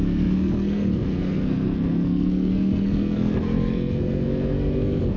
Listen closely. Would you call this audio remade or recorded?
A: remade